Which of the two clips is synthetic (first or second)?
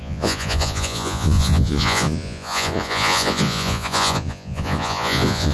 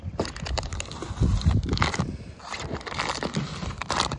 first